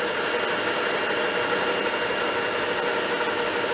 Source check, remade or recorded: recorded